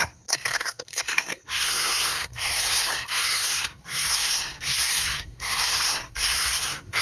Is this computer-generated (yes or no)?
yes